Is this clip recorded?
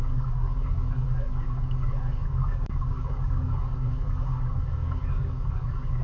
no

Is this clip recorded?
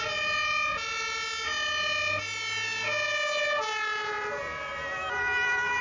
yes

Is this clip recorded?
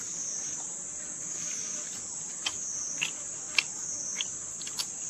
yes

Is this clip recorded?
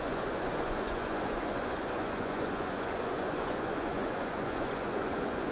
no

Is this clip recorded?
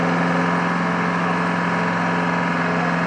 yes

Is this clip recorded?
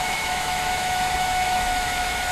no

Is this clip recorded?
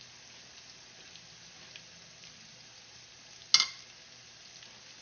yes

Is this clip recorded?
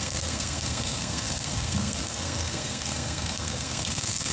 no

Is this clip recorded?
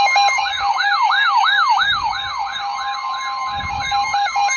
no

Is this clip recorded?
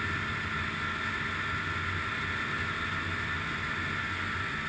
yes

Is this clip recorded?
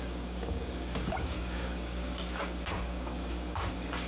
no